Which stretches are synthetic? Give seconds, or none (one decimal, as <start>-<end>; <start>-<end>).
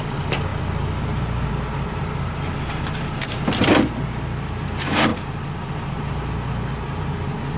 none